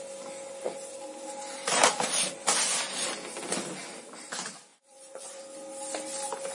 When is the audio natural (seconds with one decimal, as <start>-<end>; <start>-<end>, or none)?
0.0-4.7; 5.4-6.5